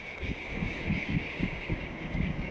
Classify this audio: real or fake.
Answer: fake